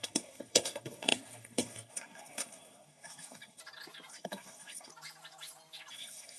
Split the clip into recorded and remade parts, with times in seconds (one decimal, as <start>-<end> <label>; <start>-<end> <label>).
0.0-3.6 remade; 3.6-4.1 recorded; 4.1-4.9 remade; 4.9-5.9 recorded; 5.9-6.4 remade